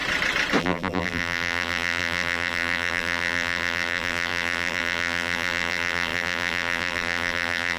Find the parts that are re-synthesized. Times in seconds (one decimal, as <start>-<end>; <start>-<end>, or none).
0.6-7.8